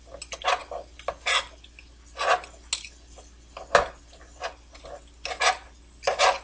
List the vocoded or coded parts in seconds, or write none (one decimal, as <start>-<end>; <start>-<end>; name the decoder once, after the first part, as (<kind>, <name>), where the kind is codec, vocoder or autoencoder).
none

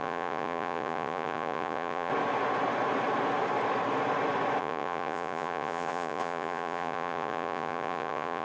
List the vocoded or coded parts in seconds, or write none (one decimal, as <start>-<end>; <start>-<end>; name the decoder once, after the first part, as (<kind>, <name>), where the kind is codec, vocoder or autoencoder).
0.0-2.1 (vocoder, Vocos); 4.6-8.4

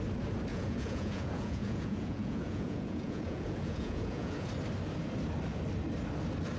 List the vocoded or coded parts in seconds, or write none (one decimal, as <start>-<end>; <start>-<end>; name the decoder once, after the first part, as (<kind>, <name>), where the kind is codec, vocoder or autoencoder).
0.5-4.5 (vocoder, Vocos)

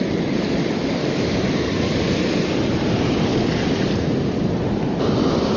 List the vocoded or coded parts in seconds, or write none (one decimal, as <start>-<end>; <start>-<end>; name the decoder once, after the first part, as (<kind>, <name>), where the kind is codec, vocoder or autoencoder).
none

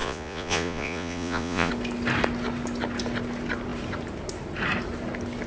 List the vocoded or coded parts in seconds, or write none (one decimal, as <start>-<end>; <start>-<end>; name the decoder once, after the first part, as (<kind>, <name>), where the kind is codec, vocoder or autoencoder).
0.0-1.7 (vocoder, Vocos)

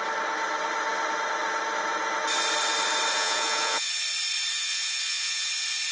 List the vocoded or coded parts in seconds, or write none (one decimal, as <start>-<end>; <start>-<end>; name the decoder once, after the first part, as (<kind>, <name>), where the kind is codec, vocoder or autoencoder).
3.1-3.9 (vocoder, Vocos); 4.5-5.5

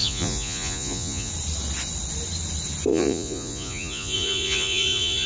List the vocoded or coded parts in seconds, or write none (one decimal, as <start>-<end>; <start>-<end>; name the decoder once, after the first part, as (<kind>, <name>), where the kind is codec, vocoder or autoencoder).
0.0-1.3 (vocoder, Vocos); 2.9-5.3